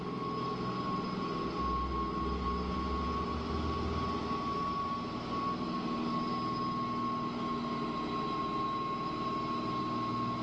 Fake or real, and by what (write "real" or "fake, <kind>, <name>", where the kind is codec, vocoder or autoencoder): real